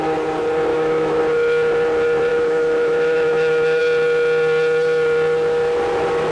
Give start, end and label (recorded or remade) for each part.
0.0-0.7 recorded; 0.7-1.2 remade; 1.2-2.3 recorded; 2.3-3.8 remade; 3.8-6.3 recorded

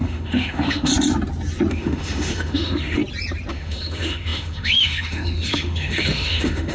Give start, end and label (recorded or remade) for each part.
0.0-0.9 remade; 0.9-1.7 recorded; 1.7-3.0 remade; 3.0-3.5 recorded; 3.5-6.7 remade

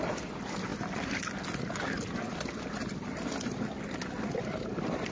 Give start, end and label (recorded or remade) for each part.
0.0-5.1 recorded

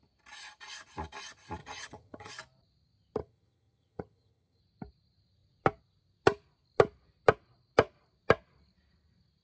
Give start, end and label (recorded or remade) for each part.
0.0-1.6 recorded; 1.6-2.3 remade; 2.3-3.2 recorded; 3.2-4.6 remade; 4.6-9.4 recorded